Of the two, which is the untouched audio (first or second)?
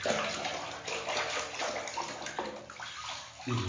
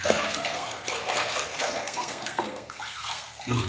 first